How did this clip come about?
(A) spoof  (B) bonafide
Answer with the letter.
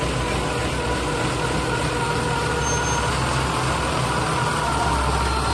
B